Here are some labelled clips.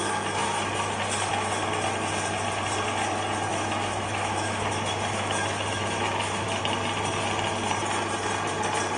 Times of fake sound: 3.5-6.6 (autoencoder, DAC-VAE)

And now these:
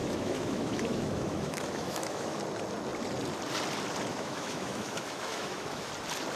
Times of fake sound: 0.0-2.4 (autoencoder, DAC-VAE); 4.1-5.9

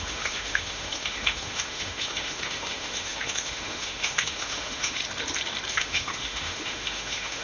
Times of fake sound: 0.0-5.0 (autoencoder, DAC-VAE); 5.7-7.4

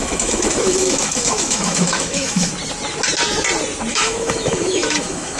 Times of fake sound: 0.0-2.5 (autoencoder, DAC-VAE); 3.9-5.4

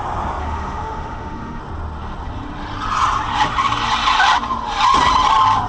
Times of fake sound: 0.4-1.6 (autoencoder, DAC-VAE)